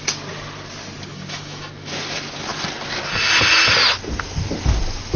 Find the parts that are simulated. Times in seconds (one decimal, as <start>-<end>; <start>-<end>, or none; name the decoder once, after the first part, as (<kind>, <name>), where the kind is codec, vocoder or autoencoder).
1.1-1.9 (autoencoder, DAC-VAE)